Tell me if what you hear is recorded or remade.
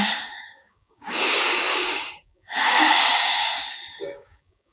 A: remade